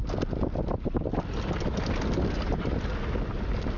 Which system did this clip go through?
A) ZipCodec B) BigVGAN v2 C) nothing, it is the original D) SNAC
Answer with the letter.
C